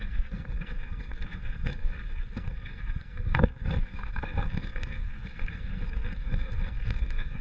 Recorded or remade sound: remade